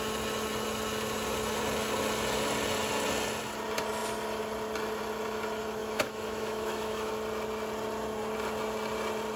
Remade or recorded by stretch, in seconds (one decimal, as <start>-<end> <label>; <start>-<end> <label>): 0.0-5.8 recorded; 5.8-7.1 remade; 7.1-9.4 recorded

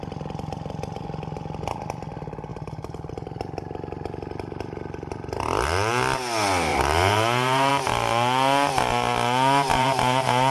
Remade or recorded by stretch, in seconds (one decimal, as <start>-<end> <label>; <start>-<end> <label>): 0.0-6.7 recorded; 6.7-7.7 remade; 7.7-9.7 recorded; 9.7-10.5 remade

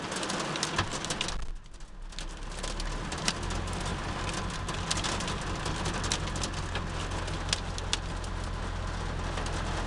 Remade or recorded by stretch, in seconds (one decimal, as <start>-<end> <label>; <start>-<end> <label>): 0.0-9.9 recorded

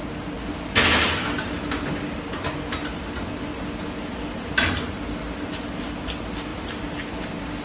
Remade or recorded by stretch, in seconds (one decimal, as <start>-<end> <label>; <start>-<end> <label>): 0.0-6.5 recorded; 6.5-7.1 remade; 7.1-7.6 recorded

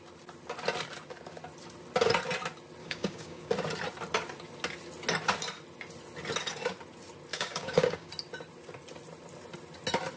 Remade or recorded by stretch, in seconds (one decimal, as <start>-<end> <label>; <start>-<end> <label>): 0.0-2.8 recorded; 2.8-3.5 remade; 3.5-7.3 recorded; 7.3-8.1 remade; 8.1-10.2 recorded

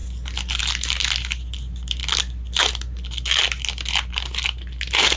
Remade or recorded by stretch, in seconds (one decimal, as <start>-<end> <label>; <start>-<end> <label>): 0.0-5.2 recorded

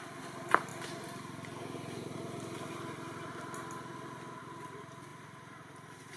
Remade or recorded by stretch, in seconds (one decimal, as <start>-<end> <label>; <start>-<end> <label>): 0.0-5.1 recorded; 5.1-6.2 remade